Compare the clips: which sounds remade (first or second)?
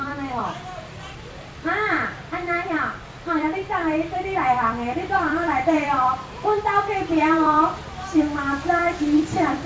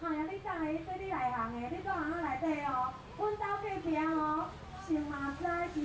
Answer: first